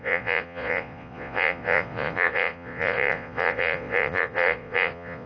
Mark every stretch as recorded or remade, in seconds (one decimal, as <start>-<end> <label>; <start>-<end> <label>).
0.0-5.3 remade